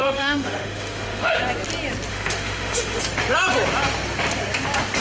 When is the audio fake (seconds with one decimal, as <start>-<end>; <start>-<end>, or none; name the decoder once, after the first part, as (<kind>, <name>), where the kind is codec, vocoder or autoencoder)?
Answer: 0.0-1.4 (autoencoder, DAC-VAE); 2.1-3.0